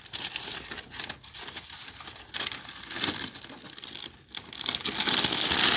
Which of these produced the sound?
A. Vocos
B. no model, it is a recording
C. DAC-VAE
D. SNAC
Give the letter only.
B